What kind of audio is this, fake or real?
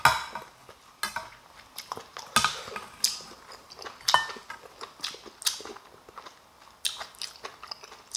real